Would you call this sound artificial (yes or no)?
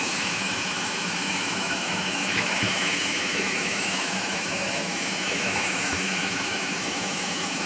yes